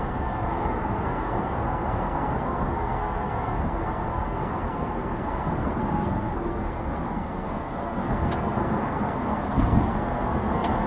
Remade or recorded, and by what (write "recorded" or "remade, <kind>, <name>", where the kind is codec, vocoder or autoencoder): remade, codec, SNAC